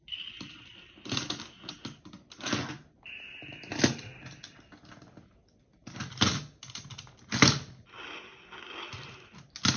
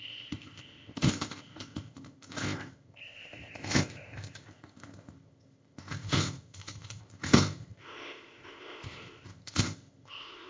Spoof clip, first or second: second